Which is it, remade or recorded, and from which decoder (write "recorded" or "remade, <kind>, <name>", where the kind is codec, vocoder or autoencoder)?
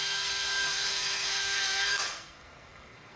remade, codec, SNAC